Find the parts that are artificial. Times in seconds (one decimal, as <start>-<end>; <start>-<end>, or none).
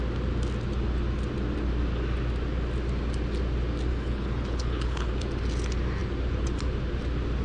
3.9-5.1